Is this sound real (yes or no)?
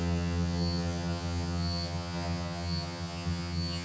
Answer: no